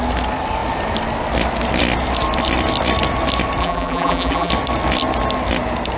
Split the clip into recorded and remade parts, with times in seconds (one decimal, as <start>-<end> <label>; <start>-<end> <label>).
0.0-3.6 recorded; 3.6-4.5 remade; 4.5-6.0 recorded